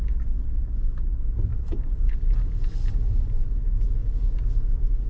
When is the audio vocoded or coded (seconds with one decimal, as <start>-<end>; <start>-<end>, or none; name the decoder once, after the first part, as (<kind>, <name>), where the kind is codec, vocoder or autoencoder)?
1.5-3.5 (vocoder, BigVGAN v2)